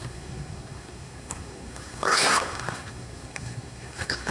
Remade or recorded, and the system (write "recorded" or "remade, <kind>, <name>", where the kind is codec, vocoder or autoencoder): remade, codec, SNAC